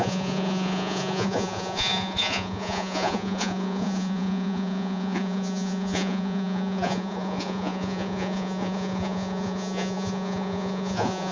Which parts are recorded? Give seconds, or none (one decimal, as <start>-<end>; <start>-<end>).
none